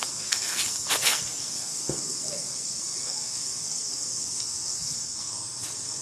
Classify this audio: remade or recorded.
remade